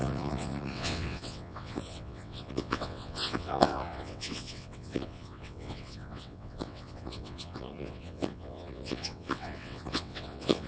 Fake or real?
fake